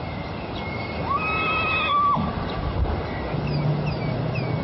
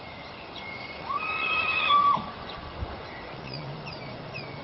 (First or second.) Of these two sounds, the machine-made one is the second